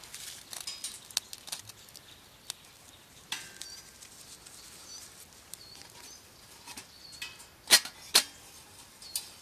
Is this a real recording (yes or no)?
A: yes